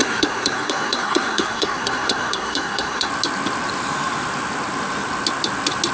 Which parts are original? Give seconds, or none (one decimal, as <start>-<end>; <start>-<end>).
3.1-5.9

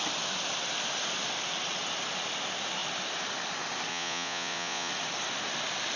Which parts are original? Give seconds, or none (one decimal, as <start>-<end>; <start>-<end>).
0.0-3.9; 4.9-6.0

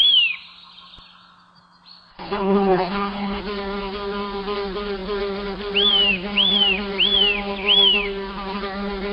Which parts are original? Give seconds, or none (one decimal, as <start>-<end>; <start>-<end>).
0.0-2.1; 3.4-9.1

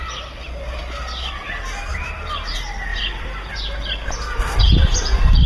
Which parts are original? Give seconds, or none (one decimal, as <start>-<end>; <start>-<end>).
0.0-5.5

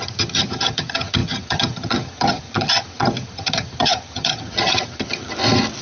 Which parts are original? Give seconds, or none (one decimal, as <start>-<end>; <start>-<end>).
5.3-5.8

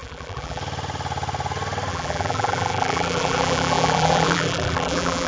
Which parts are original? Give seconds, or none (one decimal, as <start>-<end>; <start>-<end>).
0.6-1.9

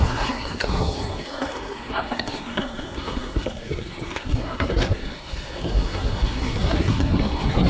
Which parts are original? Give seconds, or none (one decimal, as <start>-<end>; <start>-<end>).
none